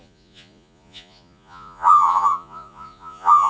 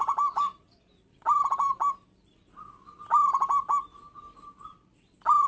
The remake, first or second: first